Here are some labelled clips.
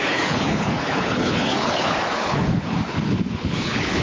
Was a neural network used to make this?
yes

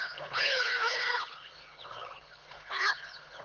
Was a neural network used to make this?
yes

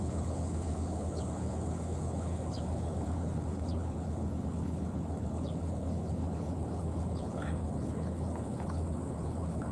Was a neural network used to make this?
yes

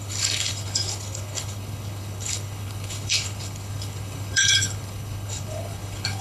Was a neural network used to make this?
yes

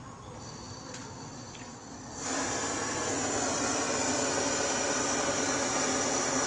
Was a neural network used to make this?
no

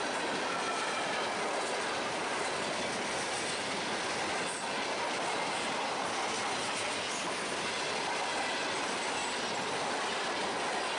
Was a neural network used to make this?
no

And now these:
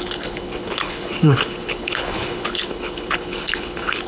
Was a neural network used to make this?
yes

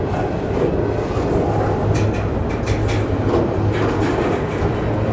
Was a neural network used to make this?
no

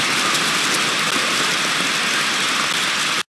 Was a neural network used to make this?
no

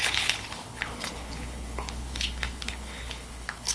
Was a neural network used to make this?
yes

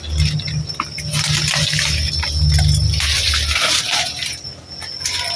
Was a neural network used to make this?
no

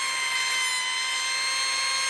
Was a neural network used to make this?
no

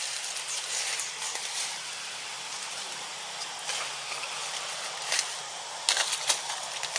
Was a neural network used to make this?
no